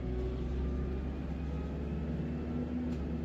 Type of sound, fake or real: real